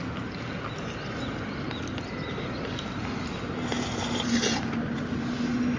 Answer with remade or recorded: recorded